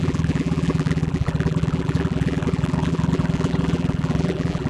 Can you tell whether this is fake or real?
fake